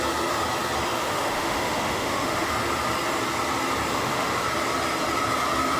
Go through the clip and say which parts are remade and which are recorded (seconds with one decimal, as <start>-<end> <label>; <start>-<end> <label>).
0.0-1.0 recorded; 1.0-2.5 remade; 2.5-3.9 recorded; 3.9-4.4 remade; 4.4-5.8 recorded